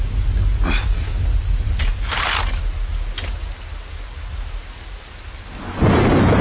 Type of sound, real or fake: real